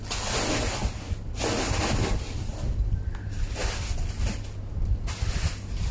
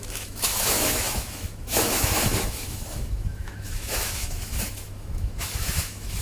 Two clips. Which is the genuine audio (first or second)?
first